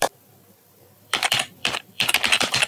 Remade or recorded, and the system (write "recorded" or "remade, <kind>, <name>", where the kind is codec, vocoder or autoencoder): remade, vocoder, BigVGAN v2